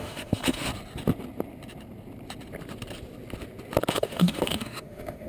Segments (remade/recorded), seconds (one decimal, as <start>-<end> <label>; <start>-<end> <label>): 0.0-0.7 remade; 0.7-3.9 recorded; 3.9-5.3 remade